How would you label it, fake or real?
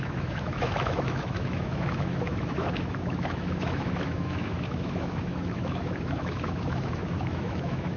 fake